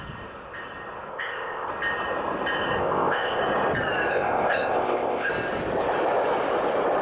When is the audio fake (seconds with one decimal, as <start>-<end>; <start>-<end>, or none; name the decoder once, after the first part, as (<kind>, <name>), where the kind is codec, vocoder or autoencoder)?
1.1-1.7 (codec, ZipCodec); 2.8-3.4; 4.1-5.3